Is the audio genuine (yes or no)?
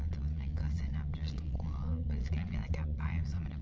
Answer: no